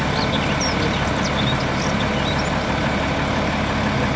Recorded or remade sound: recorded